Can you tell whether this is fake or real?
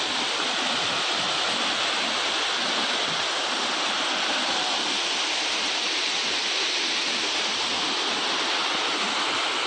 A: real